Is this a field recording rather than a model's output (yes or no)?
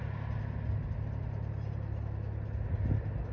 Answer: yes